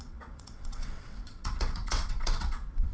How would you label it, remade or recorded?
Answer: remade